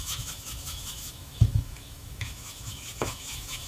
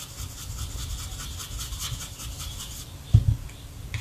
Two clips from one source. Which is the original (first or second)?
second